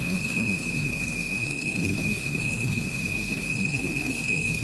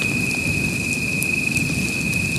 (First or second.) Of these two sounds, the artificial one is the first